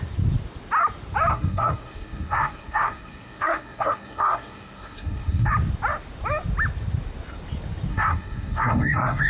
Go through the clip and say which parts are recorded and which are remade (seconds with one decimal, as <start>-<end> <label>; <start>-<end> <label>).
0.0-1.3 recorded; 1.3-5.5 remade; 5.5-7.9 recorded; 7.9-9.3 remade